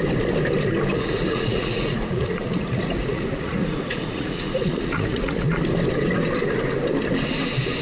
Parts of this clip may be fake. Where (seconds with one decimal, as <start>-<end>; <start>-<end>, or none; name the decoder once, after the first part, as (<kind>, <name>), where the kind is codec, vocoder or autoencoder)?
0.9-5.6 (vocoder, Vocos)